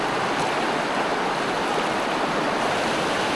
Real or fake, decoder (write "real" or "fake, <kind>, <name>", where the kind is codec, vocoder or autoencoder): real